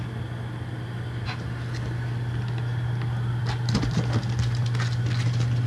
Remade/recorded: recorded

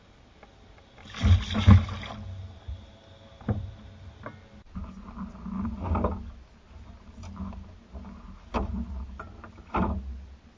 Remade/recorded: recorded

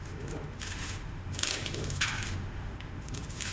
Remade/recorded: remade